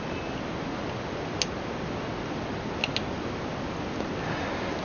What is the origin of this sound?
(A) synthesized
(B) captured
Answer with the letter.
B